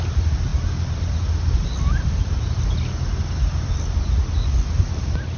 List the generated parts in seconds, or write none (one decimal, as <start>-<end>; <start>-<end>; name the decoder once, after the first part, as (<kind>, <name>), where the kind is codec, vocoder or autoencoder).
none